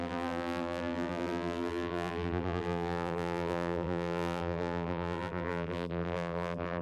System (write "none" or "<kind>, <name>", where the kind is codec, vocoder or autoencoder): vocoder, BigVGAN v2